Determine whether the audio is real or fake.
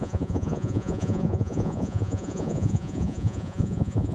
fake